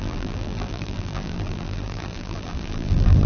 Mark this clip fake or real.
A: fake